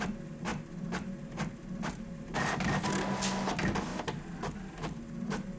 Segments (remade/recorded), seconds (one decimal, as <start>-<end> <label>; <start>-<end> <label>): 0.0-5.6 recorded